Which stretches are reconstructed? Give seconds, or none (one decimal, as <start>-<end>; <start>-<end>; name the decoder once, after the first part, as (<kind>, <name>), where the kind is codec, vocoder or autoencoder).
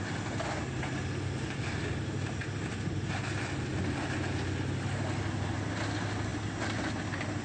none